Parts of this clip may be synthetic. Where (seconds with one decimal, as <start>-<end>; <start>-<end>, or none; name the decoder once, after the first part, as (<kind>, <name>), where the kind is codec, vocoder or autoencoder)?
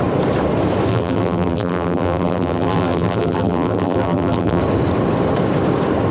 0.9-4.6 (vocoder, BigVGAN v2)